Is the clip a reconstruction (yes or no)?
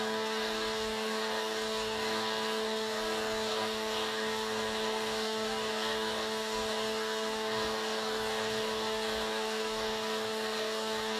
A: yes